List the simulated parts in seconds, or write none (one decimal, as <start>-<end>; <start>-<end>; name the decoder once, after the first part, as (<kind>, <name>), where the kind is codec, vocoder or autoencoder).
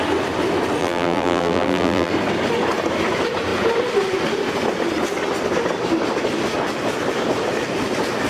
0.8-2.1 (vocoder, BigVGAN v2)